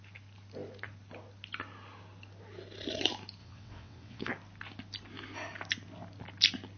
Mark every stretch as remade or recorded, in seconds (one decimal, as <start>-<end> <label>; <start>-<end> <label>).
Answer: 0.0-3.4 recorded; 3.4-4.3 remade; 4.3-6.8 recorded